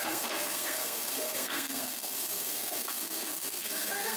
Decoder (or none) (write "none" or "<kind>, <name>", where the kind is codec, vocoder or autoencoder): codec, SNAC